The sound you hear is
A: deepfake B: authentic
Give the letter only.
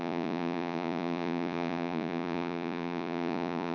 A